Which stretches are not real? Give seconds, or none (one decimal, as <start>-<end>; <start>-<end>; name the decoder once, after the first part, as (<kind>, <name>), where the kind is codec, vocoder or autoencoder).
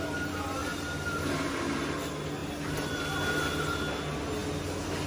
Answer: none